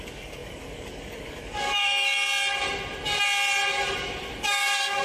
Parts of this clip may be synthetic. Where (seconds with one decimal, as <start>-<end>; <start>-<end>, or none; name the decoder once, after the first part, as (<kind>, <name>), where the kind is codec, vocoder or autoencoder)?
0.0-2.2 (codec, DAC); 4.4-5.0